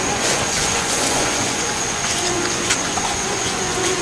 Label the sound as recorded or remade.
remade